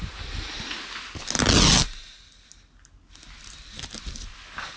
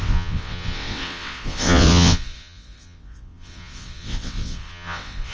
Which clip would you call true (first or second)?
first